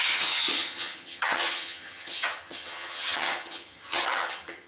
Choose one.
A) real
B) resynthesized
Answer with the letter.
B